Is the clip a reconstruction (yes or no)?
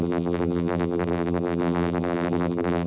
yes